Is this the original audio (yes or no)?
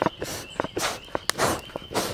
yes